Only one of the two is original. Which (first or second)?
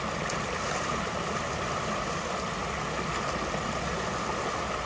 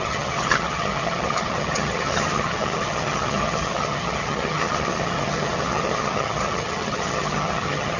first